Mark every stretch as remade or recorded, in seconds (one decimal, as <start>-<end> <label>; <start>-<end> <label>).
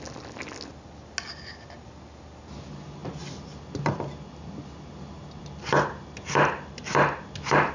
0.0-7.7 recorded